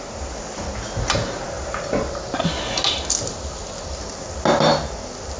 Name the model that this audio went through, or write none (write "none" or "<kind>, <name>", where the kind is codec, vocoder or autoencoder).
none